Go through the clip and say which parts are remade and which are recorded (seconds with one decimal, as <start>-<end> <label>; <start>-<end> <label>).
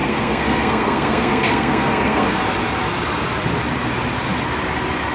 0.0-2.4 remade; 2.4-5.1 recorded